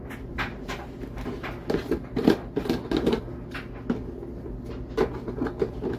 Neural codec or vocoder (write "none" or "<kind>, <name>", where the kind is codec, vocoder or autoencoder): none